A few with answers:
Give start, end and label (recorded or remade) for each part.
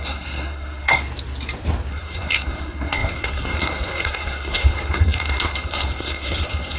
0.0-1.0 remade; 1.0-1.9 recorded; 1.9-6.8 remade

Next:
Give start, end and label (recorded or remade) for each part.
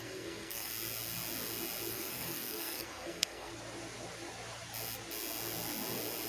0.0-0.7 remade; 0.7-1.9 recorded; 1.9-3.5 remade; 3.5-6.3 recorded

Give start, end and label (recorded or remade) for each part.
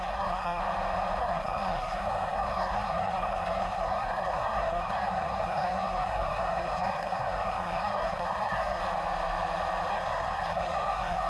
0.0-0.6 remade; 0.6-1.2 recorded; 1.2-8.8 remade; 8.8-9.9 recorded; 9.9-11.3 remade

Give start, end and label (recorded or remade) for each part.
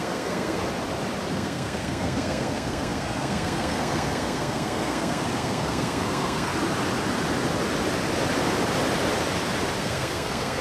0.0-0.6 remade; 0.6-1.3 recorded; 1.3-6.5 remade; 6.5-9.8 recorded; 9.8-10.6 remade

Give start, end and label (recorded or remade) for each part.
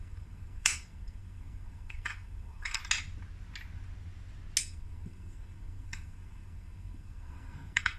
0.0-2.8 remade; 2.8-4.6 recorded; 4.6-8.0 remade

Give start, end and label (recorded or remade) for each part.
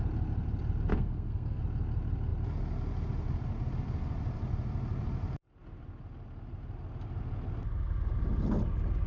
0.0-0.9 recorded; 0.9-1.6 remade; 1.6-9.1 recorded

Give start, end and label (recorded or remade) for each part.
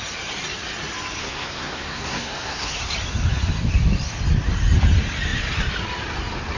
0.0-1.2 recorded; 1.2-2.8 remade; 2.8-6.6 recorded